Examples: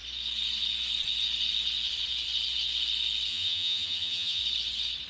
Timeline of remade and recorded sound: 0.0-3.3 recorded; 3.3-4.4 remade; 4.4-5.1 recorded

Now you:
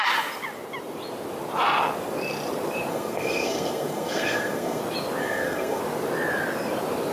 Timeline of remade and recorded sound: 0.0-2.9 recorded; 2.9-4.8 remade; 4.8-5.2 recorded; 5.2-5.8 remade; 5.8-7.1 recorded

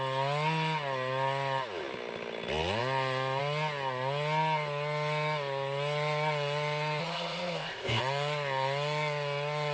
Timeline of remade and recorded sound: 0.0-7.0 recorded; 7.0-8.0 remade; 8.0-9.7 recorded